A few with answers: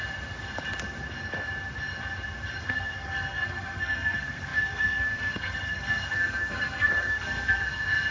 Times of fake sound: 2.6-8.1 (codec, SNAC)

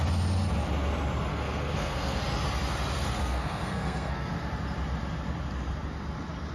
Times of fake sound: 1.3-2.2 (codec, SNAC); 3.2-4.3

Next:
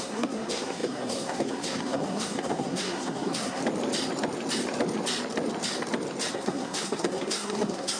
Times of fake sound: 0.0-3.6 (codec, SNAC); 6.3-8.0

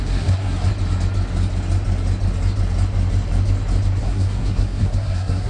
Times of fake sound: 0.0-0.7 (codec, SNAC); 4.0-5.5

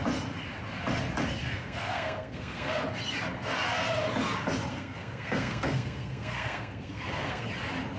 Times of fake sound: 1.4-2.8 (codec, SNAC); 4.7-7.5

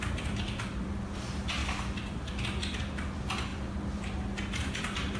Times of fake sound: none

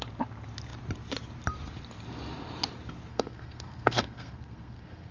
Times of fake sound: 3.1-5.1 (codec, SNAC)

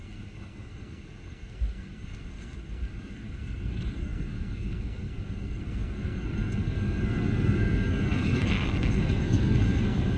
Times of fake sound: 0.0-10.2 (codec, SNAC)